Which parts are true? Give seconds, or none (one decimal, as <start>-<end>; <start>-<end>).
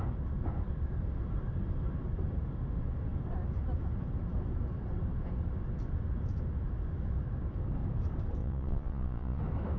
0.0-8.4; 9.4-9.8